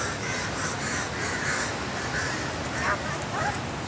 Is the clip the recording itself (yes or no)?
yes